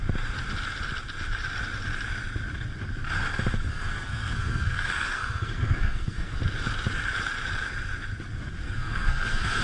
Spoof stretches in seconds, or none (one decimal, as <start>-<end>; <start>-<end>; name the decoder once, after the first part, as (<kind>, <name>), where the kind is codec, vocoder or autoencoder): 3.7-6.4 (codec, SNAC); 8.6-9.6